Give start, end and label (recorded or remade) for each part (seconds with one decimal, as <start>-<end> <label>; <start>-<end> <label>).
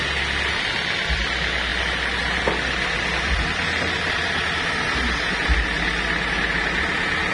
0.0-7.3 recorded